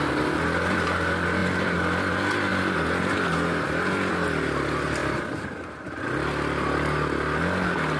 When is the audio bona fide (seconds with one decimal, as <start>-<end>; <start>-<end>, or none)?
0.0-8.0